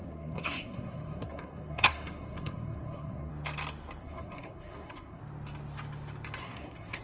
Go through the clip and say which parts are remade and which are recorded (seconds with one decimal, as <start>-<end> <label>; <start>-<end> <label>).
0.0-3.3 remade; 3.3-4.0 recorded; 4.0-5.2 remade; 5.2-6.4 recorded; 6.4-7.0 remade